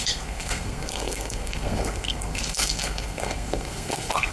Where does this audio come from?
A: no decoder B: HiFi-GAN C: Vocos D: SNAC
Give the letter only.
D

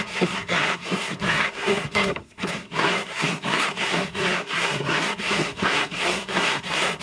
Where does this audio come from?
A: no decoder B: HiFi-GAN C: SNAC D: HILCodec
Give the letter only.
C